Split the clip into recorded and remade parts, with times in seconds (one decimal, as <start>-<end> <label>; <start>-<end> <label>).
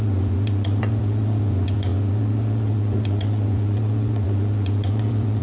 0.0-5.4 remade